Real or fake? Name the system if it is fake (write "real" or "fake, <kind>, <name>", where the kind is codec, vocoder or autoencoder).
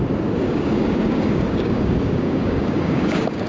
fake, codec, DAC